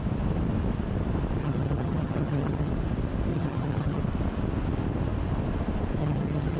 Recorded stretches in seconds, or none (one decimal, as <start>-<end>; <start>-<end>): 0.0-1.4; 2.7-3.3; 4.0-6.0